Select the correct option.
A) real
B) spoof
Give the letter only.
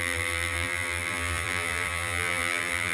B